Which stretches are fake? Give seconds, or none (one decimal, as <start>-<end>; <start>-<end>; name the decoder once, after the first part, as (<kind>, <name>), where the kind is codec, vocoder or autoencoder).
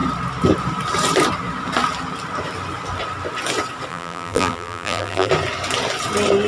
3.9-5.3 (vocoder, BigVGAN v2)